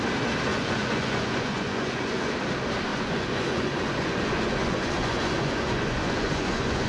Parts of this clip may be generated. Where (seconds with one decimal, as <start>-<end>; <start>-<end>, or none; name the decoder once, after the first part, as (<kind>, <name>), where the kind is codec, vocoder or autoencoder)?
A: 0.5-2.3 (vocoder, Vocos); 2.9-6.9